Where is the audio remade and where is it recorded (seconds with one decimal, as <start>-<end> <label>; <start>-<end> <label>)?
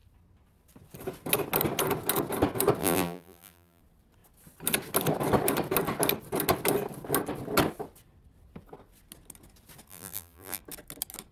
0.0-2.8 recorded; 2.8-3.8 remade; 3.8-9.9 recorded; 9.9-10.6 remade; 10.6-11.3 recorded